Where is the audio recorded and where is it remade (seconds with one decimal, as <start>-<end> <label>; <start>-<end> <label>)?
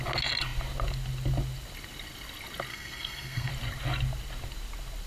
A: 0.0-2.7 recorded; 2.7-3.5 remade; 3.5-5.1 recorded